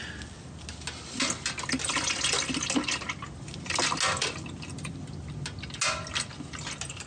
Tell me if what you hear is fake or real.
real